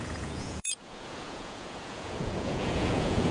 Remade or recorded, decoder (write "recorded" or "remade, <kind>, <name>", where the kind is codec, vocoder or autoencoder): remade, vocoder, Vocos